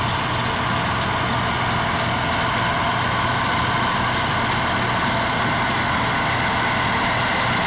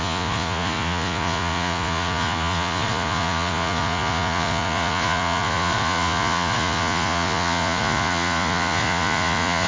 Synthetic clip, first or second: second